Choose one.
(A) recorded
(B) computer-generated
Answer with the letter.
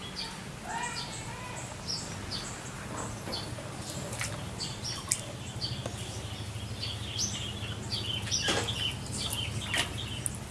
A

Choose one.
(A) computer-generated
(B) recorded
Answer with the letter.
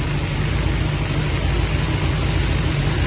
B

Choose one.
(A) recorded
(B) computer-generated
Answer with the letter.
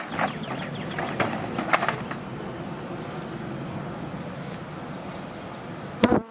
A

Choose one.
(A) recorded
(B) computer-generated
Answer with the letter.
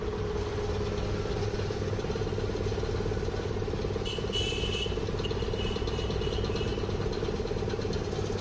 A